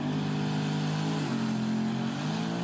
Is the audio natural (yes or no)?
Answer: yes